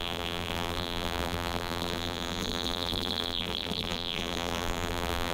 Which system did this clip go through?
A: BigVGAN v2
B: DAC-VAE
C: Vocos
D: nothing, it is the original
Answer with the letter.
A